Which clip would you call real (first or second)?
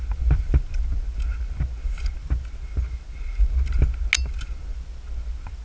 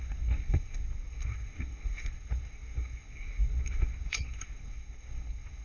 first